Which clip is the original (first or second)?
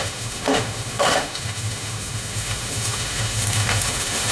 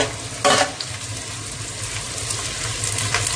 second